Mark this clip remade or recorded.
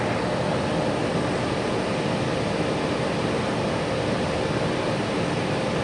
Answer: recorded